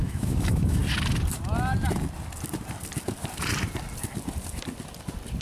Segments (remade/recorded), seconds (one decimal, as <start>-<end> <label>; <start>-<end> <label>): 0.0-0.8 remade; 0.8-5.4 recorded